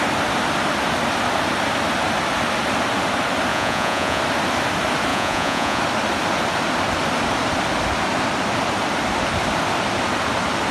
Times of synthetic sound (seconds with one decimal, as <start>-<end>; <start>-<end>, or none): 3.5-4.2; 5.1-5.8

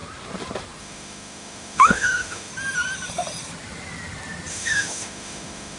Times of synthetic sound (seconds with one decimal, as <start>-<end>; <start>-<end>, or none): 0.8-2.5; 4.5-5.8

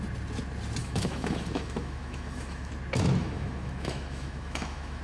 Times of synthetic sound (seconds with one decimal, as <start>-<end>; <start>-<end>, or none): 0.8-2.7; 3.2-5.0

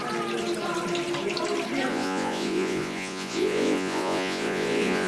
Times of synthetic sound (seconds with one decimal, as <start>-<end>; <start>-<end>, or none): 1.9-5.1

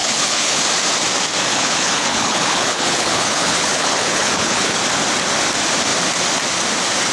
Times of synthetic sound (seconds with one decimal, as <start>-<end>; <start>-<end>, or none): 0.0-0.6; 1.5-4.8

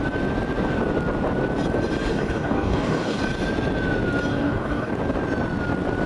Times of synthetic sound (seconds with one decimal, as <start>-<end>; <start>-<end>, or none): 2.1-3.2; 4.3-4.9